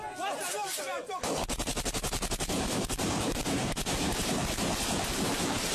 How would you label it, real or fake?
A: real